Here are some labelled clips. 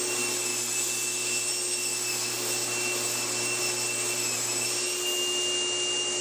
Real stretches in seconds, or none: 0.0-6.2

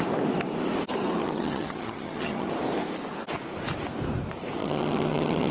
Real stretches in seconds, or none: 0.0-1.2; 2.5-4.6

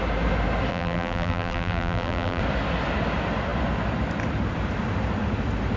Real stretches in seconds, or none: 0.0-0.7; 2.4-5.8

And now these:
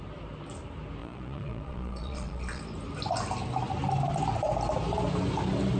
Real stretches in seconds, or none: 0.0-1.0; 2.6-5.8

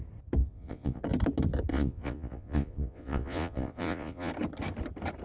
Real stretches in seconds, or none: 0.0-0.4; 1.0-1.7; 4.3-5.2

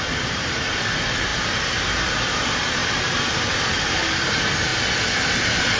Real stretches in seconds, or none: 4.7-5.8